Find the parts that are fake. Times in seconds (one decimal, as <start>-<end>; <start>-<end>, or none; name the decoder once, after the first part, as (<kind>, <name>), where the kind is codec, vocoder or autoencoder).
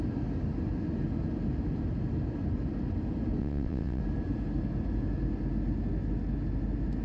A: 3.4-4.0 (vocoder, WaveNeXt)